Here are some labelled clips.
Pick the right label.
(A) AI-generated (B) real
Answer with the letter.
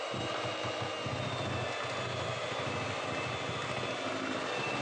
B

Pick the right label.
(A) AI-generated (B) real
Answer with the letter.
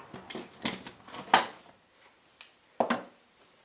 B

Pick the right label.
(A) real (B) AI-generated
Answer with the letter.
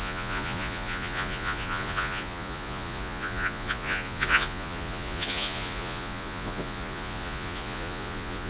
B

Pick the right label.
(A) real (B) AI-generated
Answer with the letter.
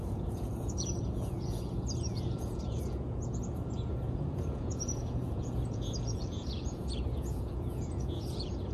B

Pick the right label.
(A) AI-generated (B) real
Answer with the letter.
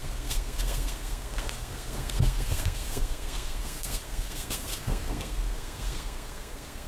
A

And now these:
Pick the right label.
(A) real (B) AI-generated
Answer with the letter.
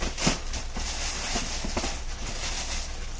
A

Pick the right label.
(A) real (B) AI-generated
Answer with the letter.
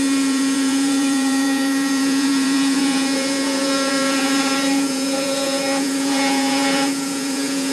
B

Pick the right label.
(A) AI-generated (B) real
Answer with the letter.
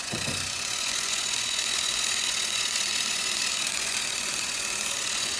A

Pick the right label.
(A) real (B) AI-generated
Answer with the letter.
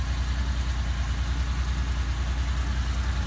A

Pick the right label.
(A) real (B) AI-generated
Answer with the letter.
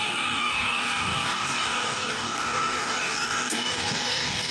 B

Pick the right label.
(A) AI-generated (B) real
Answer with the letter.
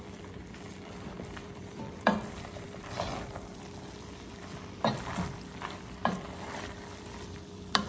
A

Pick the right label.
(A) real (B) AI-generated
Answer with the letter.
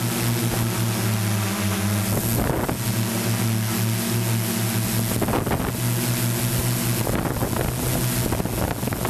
A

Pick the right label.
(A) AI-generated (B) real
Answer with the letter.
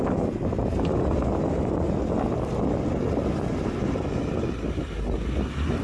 B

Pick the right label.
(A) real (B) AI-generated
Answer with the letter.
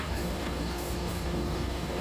B